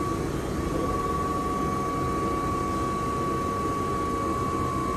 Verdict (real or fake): real